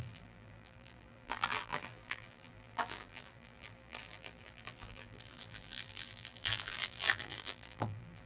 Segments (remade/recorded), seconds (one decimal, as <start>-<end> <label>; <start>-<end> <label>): 0.0-8.3 remade